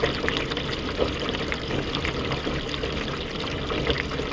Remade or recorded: recorded